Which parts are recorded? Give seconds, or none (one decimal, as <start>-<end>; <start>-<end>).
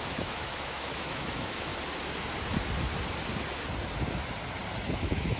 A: 1.7-4.9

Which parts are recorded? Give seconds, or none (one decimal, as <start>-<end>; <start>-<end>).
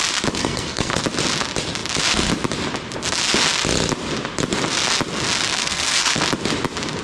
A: 0.0-0.4; 1.0-5.6; 6.2-7.0